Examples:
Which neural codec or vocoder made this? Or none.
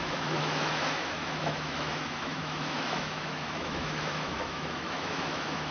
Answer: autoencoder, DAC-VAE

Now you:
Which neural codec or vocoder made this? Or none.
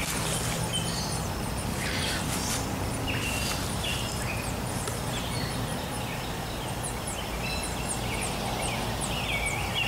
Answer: none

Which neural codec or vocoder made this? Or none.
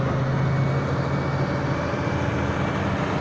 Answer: none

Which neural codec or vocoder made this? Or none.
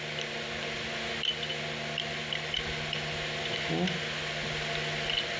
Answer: none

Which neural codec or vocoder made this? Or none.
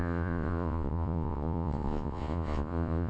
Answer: vocoder, Vocos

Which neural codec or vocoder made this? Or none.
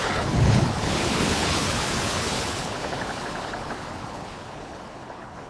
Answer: codec, HILCodec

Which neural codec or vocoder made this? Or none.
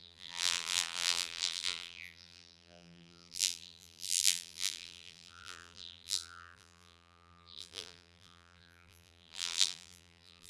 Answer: vocoder, BigVGAN v2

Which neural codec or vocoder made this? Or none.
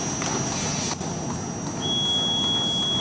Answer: none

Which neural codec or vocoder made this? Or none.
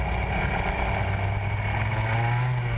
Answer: none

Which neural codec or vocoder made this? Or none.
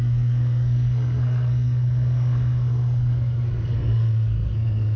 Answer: codec, SNAC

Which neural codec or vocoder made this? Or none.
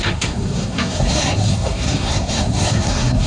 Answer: codec, SNAC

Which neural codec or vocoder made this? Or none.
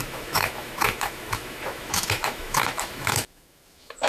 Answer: autoencoder, DAC-VAE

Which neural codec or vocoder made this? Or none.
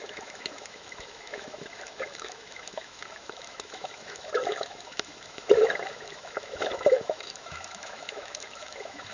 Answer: autoencoder, DAC-VAE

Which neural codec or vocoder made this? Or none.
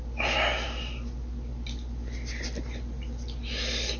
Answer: none